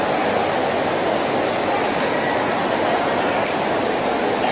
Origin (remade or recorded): recorded